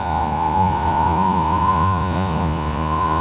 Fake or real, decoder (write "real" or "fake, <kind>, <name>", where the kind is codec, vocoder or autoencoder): fake, vocoder, Vocos